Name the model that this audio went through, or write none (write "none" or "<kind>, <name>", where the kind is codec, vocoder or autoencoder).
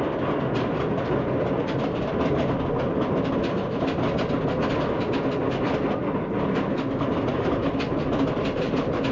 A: none